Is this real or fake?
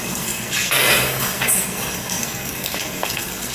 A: fake